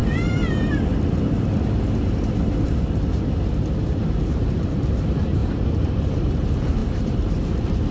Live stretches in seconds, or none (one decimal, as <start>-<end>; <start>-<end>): 0.0-3.8